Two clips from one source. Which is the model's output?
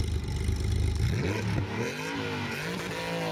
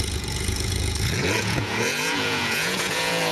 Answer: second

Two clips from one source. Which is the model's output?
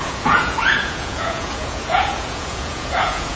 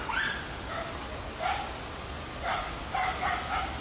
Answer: first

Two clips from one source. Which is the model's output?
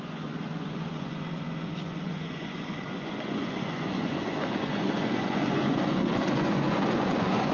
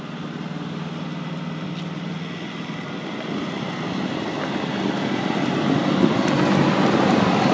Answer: first